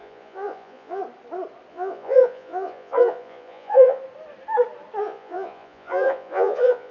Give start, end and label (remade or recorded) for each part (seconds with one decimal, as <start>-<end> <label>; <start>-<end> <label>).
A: 0.0-1.0 remade; 1.0-1.7 recorded; 1.7-4.0 remade; 4.0-5.0 recorded; 5.0-6.9 remade